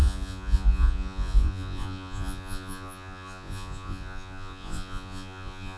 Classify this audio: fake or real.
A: fake